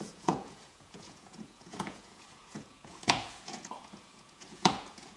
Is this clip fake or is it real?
fake